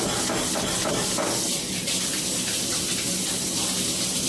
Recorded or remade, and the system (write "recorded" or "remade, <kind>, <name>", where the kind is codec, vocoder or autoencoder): recorded